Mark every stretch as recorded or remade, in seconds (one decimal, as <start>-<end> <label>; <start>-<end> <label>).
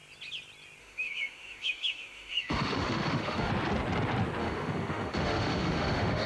0.0-0.8 recorded; 0.8-3.5 remade; 3.5-4.4 recorded; 4.4-6.3 remade